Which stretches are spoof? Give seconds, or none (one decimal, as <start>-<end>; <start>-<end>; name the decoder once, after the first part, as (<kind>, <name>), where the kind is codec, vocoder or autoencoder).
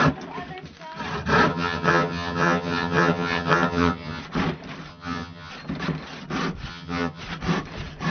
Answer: 1.5-4.2 (vocoder, HiFi-GAN); 4.9-5.5; 6.7-7.2